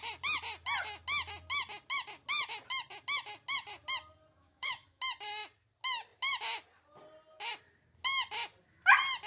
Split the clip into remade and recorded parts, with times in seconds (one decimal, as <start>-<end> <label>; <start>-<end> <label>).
0.0-4.4 recorded; 4.4-5.0 remade; 5.0-9.3 recorded